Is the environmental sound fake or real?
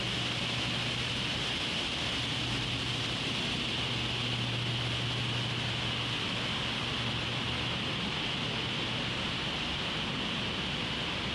real